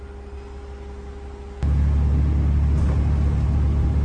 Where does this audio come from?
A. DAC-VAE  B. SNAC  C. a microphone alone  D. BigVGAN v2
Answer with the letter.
C